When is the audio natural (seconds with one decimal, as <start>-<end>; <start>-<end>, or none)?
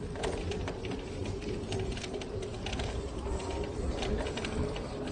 0.0-5.1